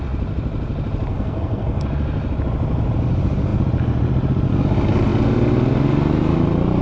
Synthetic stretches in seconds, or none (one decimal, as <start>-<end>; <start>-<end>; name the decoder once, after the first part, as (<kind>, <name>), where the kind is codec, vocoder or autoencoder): 1.1-1.8 (codec, SNAC)